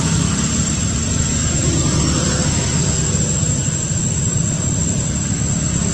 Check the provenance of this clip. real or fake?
real